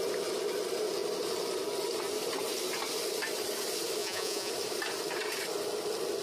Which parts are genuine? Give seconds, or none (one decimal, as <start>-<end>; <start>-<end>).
0.0-4.0; 4.5-6.2